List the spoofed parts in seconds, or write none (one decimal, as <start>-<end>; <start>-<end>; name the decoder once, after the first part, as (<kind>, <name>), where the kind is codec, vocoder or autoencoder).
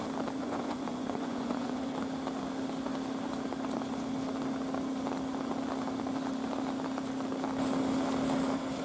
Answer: 0.4-1.9 (vocoder, Vocos)